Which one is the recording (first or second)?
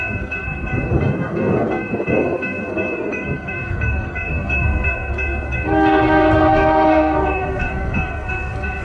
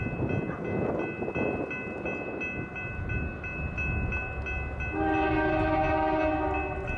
second